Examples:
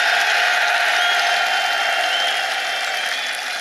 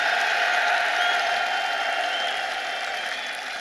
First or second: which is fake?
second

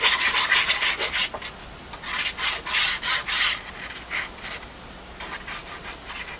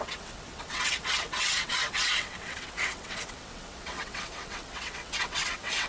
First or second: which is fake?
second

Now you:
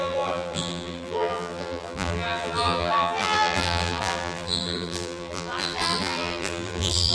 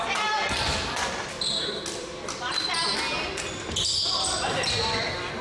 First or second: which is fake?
first